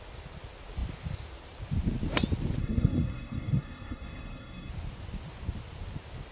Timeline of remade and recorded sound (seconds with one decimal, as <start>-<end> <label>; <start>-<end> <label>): 0.0-2.6 recorded; 2.6-4.7 remade; 4.7-6.3 recorded